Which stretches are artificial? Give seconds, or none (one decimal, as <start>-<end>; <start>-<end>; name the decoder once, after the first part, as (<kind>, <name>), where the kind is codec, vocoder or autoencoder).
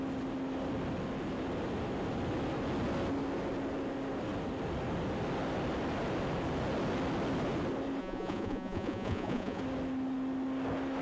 8.0-9.6 (vocoder, Vocos)